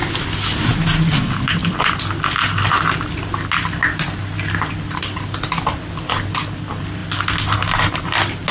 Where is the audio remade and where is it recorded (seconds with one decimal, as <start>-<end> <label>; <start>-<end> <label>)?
0.0-8.5 recorded